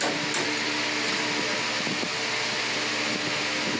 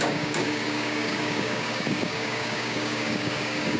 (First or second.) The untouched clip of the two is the first